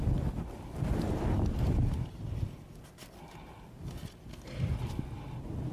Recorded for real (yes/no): yes